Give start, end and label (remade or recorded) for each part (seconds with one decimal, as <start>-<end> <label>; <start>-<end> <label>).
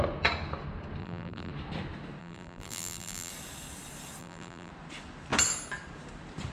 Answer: 0.0-1.0 recorded; 1.0-1.5 remade; 1.5-2.2 recorded; 2.2-3.3 remade; 3.3-4.2 recorded; 4.2-4.7 remade; 4.7-6.5 recorded